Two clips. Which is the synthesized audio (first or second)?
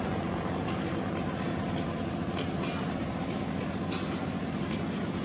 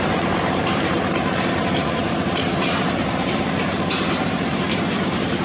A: second